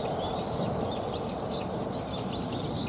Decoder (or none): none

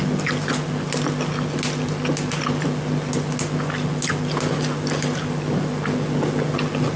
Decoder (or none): none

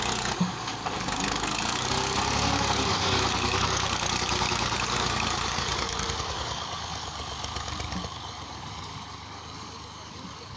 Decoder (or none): codec, DAC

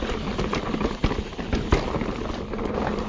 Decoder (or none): none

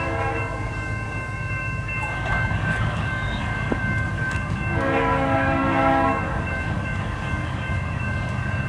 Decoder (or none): codec, DAC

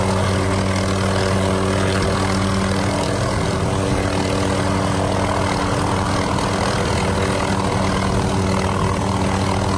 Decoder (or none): none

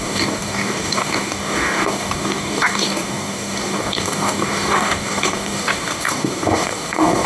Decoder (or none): codec, DAC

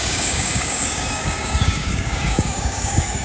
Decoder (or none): codec, DAC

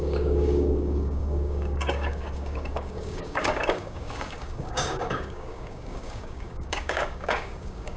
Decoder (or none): codec, DAC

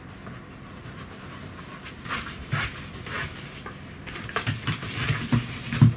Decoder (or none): none